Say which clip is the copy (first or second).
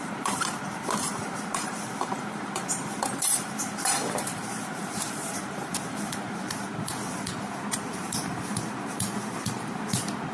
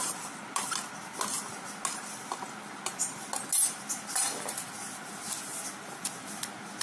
first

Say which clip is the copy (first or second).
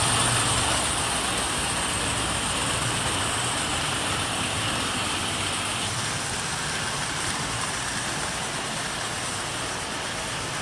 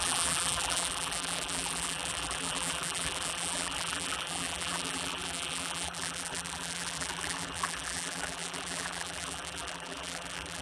second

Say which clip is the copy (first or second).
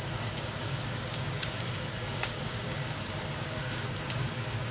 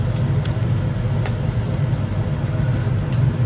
first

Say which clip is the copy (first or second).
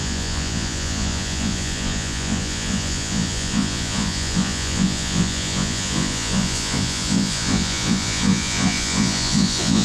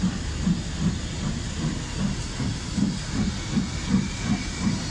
first